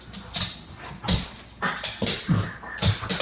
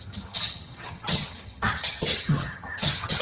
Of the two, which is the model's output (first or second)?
second